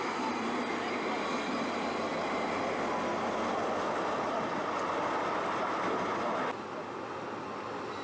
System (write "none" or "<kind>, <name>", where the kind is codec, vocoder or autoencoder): none